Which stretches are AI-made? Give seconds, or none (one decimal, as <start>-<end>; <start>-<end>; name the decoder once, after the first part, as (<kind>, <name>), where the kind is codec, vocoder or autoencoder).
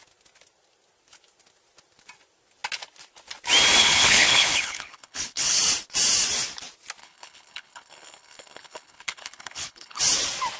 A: 3.8-5.6 (codec, HILCodec); 7.0-10.0